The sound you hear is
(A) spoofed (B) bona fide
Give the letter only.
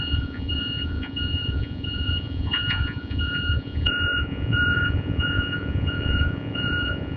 A